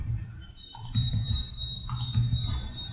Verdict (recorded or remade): remade